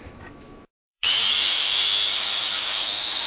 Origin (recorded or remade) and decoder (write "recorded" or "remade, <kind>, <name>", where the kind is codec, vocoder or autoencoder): remade, autoencoder, DAC-VAE